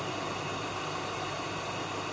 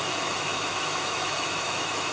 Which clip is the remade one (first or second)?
second